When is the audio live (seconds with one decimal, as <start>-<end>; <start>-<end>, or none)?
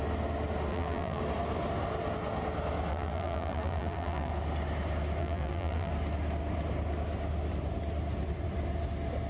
0.0-0.7; 1.2-2.9; 4.3-5.2; 5.9-9.3